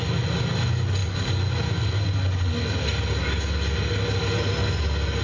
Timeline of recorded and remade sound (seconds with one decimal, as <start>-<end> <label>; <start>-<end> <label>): 0.0-5.2 recorded